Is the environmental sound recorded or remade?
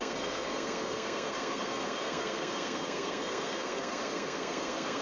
remade